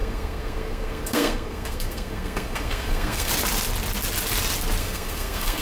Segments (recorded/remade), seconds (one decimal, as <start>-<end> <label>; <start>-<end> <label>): 0.0-3.3 remade; 3.3-4.8 recorded; 4.8-5.6 remade